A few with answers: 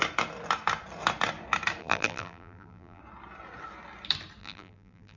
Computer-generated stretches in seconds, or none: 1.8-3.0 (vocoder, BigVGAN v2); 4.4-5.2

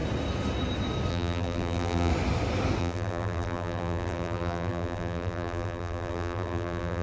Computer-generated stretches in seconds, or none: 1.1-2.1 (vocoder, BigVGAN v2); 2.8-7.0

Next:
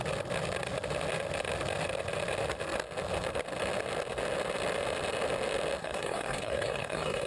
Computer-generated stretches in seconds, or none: 5.8-7.3 (codec, SNAC)